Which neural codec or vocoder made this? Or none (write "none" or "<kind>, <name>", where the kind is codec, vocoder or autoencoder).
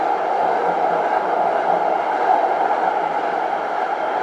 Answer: none